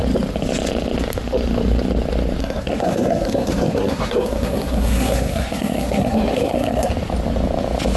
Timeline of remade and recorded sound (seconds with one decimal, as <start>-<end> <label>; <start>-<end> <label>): 0.0-2.4 recorded; 2.4-6.9 remade; 6.9-8.0 recorded